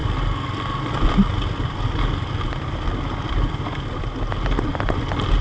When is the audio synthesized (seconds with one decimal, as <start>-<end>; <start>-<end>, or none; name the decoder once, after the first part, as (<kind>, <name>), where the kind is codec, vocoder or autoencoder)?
none